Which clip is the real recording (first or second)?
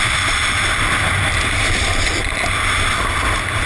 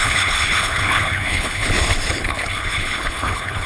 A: first